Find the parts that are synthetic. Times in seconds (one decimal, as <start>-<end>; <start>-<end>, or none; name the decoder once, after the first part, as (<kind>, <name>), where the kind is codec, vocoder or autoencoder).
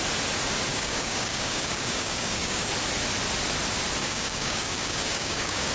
0.7-2.7 (codec, DAC); 4.0-5.7